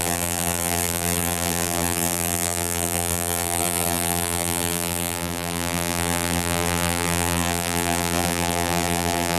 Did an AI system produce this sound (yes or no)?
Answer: yes